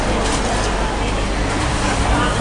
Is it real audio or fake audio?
real